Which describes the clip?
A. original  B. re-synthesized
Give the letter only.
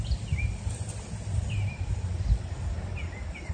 A